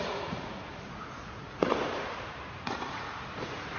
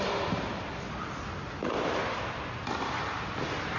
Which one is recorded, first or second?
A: second